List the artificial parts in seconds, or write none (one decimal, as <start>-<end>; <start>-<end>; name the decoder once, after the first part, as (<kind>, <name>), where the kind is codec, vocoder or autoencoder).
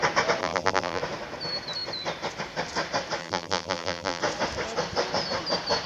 0.4-1.0 (vocoder, BigVGAN v2); 3.2-4.2